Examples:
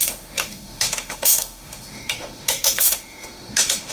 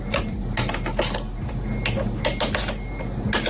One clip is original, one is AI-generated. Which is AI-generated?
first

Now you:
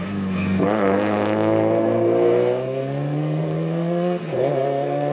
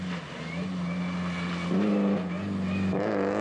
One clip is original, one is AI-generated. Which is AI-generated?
first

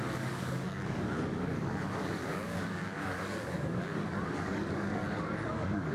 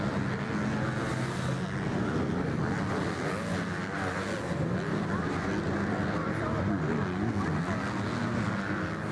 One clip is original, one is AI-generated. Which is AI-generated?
first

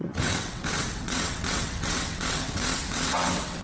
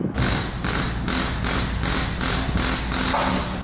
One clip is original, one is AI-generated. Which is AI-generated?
first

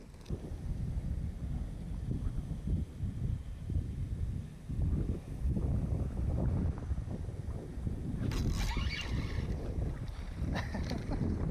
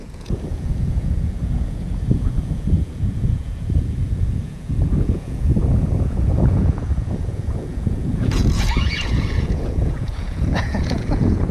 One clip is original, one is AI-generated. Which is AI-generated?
second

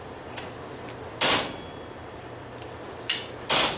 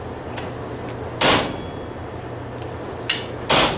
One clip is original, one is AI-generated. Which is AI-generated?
first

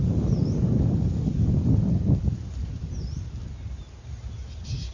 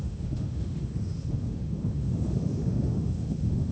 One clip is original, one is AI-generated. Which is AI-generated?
second